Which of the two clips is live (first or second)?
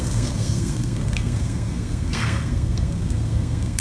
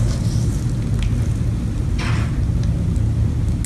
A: second